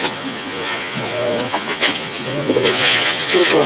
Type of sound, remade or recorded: remade